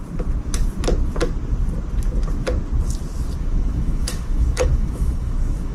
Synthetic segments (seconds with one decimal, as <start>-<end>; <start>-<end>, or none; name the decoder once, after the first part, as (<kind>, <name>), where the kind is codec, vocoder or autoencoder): 3.4-5.7 (autoencoder, DAC-VAE)